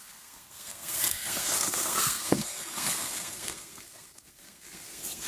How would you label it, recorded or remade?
remade